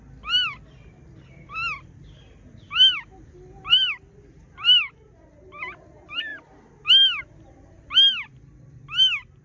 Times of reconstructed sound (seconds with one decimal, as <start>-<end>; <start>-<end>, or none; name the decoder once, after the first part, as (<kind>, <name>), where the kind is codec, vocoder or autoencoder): none